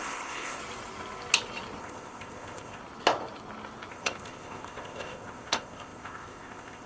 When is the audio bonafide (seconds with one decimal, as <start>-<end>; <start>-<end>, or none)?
0.6-1.8; 2.8-3.9